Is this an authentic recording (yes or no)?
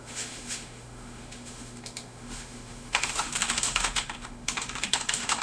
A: no